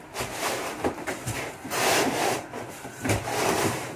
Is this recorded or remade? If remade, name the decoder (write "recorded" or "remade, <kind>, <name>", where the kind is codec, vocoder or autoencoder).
remade, vocoder, BigVGAN v2